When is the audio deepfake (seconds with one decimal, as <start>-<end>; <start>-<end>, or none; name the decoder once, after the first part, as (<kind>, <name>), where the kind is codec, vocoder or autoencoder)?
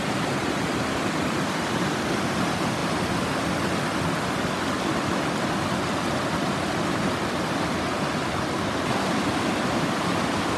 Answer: none